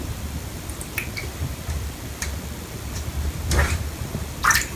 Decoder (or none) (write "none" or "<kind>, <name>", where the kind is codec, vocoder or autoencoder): vocoder, BigVGAN v2